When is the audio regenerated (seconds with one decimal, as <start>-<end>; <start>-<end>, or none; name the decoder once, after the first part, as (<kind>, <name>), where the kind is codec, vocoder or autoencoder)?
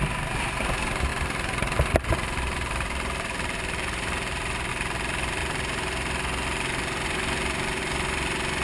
1.1-4.7 (vocoder, BigVGAN v2)